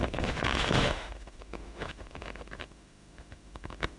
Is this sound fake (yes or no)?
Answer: yes